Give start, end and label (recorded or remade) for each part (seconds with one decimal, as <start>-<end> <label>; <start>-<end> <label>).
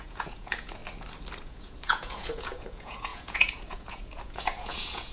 0.0-0.8 remade; 0.8-1.4 recorded; 1.4-5.1 remade